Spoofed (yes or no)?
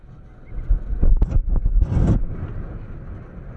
no